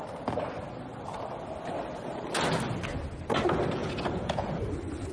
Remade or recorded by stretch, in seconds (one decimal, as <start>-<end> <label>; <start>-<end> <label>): 0.0-3.8 recorded; 3.8-4.5 remade; 4.5-5.1 recorded